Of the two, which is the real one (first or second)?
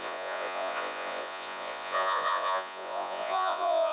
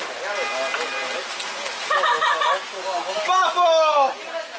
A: second